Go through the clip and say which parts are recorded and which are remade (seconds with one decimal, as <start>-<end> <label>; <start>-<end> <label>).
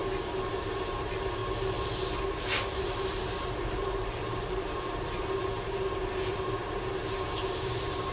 0.0-0.5 recorded; 0.5-1.4 remade; 1.4-2.2 recorded; 2.2-8.1 remade